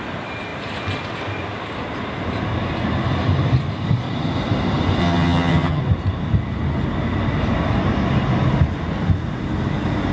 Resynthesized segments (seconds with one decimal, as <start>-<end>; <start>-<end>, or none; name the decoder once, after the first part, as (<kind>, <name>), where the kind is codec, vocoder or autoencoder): 5.0-5.8 (vocoder, HiFi-GAN)